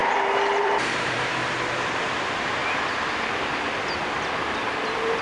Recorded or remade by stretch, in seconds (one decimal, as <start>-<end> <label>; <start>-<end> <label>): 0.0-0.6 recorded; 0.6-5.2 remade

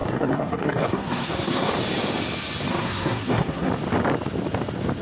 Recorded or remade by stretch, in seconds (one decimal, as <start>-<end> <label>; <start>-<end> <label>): 0.0-1.7 remade; 1.7-2.7 recorded; 2.7-3.7 remade; 3.7-5.0 recorded

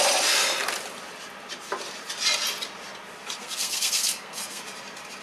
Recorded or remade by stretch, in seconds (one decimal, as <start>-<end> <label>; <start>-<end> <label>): 0.0-3.4 recorded; 3.4-4.6 remade; 4.6-5.2 recorded

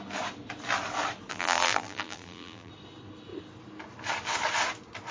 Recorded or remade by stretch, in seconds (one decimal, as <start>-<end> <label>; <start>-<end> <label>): 0.0-1.3 recorded; 1.3-2.7 remade; 2.7-5.1 recorded

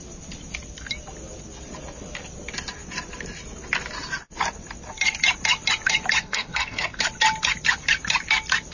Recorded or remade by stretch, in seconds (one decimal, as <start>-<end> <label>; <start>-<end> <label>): 0.0-6.2 recorded; 6.2-7.0 remade; 7.0-8.7 recorded

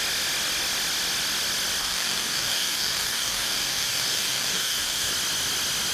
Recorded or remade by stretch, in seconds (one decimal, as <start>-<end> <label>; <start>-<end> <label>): 0.0-1.8 recorded; 1.8-5.1 remade; 5.1-5.9 recorded

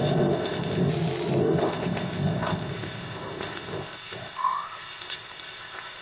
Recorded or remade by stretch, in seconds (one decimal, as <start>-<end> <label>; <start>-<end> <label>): 0.0-0.9 remade; 0.9-1.4 recorded; 1.4-6.0 remade